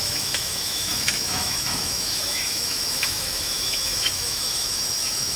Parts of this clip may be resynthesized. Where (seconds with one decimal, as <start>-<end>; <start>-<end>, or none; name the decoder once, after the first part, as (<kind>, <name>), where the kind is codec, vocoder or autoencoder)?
0.0-5.4 (autoencoder, DAC-VAE)